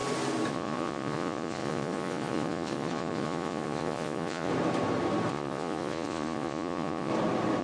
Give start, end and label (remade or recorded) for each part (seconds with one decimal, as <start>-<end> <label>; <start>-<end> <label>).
0.0-0.5 recorded; 0.5-4.5 remade; 4.5-5.3 recorded; 5.3-7.1 remade; 7.1-7.6 recorded